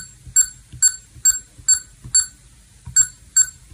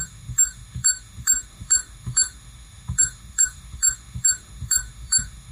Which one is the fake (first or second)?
second